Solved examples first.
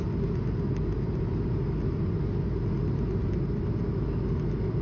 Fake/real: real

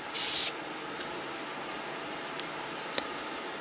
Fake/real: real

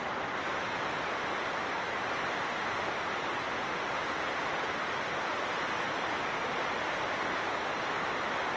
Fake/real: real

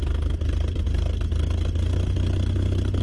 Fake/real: real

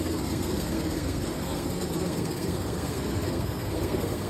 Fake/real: fake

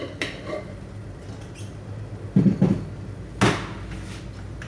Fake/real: real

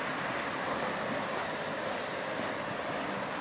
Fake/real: real